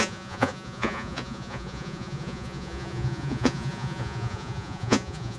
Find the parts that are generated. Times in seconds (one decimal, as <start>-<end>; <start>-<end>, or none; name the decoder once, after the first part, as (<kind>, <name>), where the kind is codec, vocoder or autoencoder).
0.0-5.4 (vocoder, Vocos)